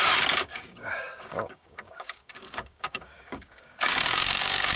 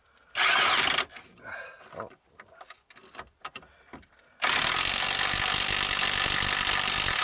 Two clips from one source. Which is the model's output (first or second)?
first